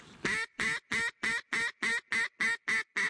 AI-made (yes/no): no